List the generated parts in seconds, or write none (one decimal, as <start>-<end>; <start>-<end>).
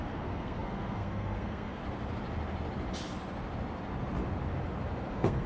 0.0-1.8; 5.1-5.5